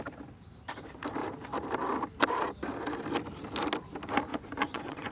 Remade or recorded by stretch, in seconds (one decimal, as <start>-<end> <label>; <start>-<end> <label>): 0.0-4.3 recorded; 4.3-5.1 remade